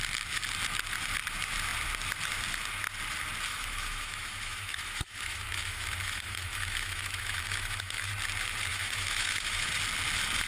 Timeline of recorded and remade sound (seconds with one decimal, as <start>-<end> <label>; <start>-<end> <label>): 0.0-3.5 recorded; 3.5-8.1 remade; 8.1-8.7 recorded; 8.7-9.7 remade; 9.7-10.5 recorded